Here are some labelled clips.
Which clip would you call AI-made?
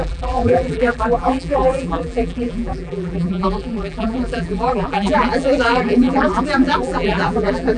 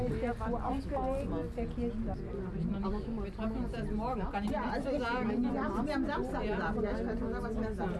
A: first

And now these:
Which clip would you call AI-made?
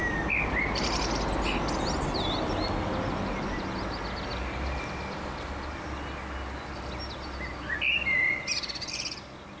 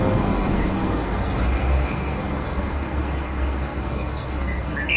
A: second